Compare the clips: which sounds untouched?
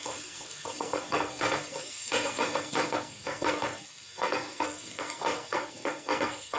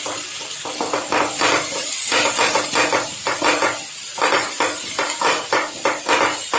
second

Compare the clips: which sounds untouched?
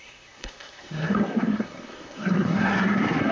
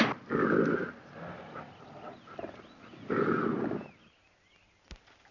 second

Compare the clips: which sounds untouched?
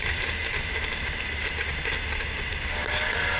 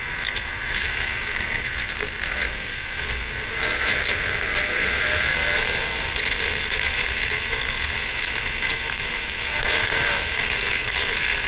first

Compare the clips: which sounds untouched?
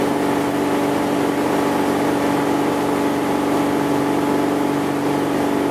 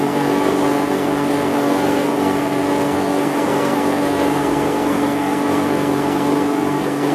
first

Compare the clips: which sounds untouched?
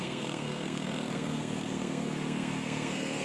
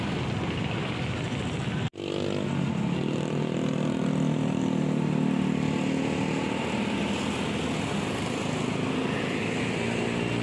second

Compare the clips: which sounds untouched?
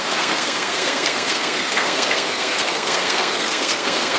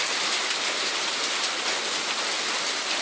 second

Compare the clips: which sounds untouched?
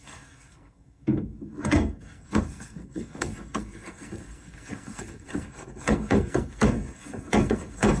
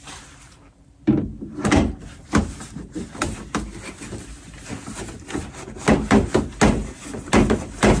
second